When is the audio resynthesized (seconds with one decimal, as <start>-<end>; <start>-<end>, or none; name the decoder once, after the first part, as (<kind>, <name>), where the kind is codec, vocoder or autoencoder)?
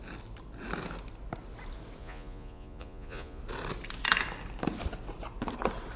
2.0-3.4 (vocoder, Vocos)